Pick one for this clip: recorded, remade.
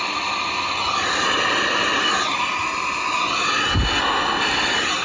recorded